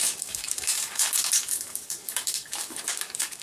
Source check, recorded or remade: remade